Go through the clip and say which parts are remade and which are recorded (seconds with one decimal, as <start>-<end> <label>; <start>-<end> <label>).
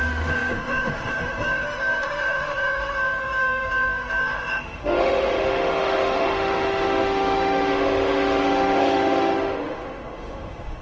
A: 0.0-10.8 remade